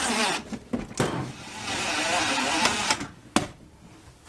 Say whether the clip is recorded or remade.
recorded